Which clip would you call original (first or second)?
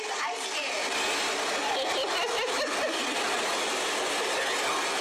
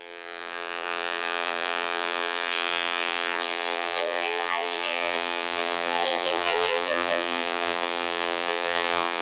first